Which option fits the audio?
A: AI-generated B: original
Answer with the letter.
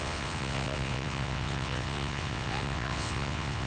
A